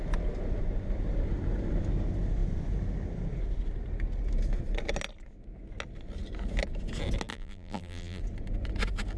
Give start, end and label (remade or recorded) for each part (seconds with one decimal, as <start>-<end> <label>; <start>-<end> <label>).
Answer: 0.0-7.3 recorded; 7.3-8.2 remade; 8.2-9.2 recorded